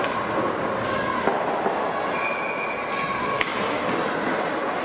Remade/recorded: recorded